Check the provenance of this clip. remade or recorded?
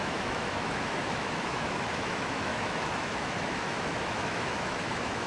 remade